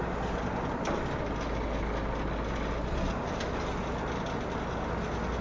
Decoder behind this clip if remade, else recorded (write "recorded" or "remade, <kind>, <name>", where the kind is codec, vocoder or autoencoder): recorded